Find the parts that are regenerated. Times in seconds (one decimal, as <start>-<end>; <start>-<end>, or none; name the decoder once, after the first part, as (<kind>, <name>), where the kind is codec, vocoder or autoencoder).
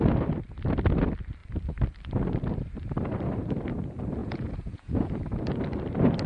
4.2-5.2 (vocoder, Vocos)